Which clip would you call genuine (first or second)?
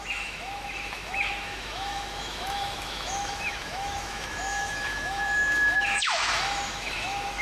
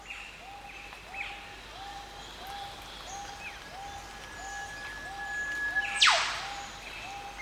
second